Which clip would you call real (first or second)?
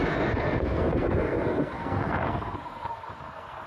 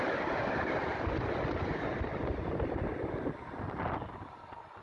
second